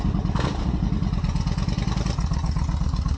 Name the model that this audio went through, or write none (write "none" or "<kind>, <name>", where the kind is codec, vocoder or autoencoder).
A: none